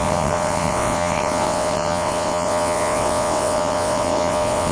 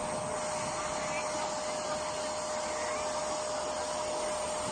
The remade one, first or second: first